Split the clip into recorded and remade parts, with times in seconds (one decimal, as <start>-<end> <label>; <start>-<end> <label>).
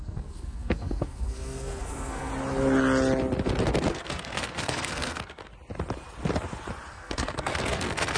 0.0-2.3 remade; 2.3-3.9 recorded; 3.9-5.4 remade; 5.4-6.9 recorded; 6.9-8.2 remade